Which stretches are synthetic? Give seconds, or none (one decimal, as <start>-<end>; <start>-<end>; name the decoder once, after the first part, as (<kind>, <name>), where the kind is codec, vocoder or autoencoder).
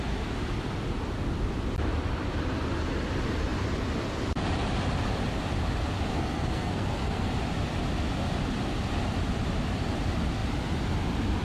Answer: 6.1-7.3 (codec, SNAC)